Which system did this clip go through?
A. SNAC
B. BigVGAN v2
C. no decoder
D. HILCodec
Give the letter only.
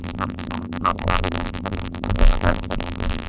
B